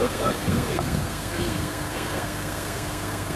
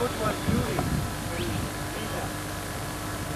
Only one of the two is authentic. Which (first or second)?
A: second